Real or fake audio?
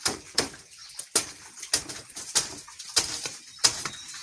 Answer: real